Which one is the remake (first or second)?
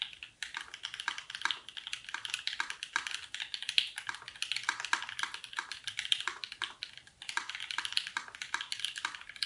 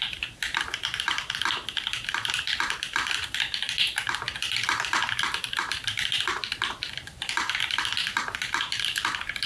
second